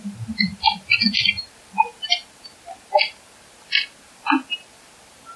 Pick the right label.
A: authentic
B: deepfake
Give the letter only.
A